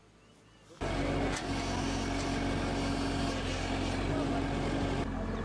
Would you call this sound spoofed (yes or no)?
no